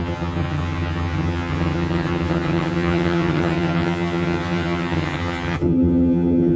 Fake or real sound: fake